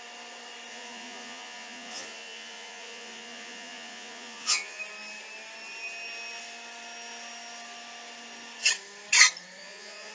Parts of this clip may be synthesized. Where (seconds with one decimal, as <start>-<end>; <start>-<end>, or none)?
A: 0.7-4.8; 9.6-10.1